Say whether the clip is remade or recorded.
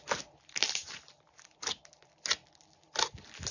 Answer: recorded